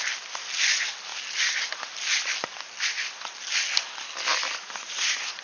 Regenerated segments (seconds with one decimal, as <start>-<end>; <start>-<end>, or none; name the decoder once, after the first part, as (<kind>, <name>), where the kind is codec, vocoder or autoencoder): 4.6-5.4 (vocoder, Vocos)